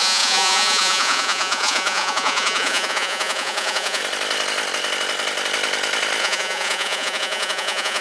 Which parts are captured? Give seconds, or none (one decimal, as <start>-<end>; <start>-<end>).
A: 4.0-6.2